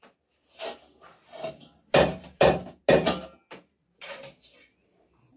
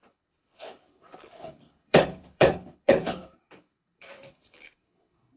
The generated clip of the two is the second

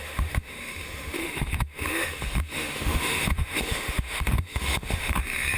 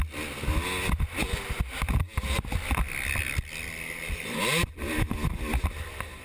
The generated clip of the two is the first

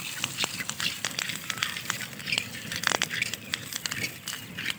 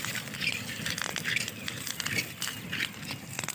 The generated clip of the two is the first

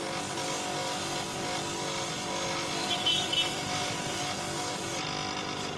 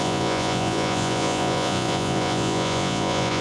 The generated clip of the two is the second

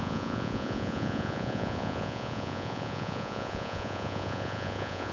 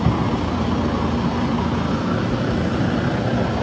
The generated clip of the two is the first